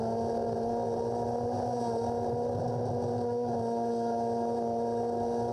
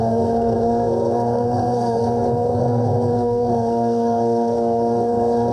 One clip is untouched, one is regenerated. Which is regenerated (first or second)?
second